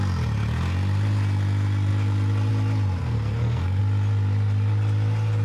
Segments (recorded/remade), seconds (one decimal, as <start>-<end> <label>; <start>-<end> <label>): 0.0-3.0 recorded; 3.0-3.8 remade; 3.8-5.4 recorded

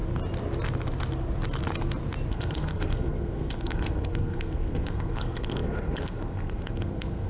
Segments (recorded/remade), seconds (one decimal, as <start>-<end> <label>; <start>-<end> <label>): 0.0-2.3 recorded; 2.3-7.3 remade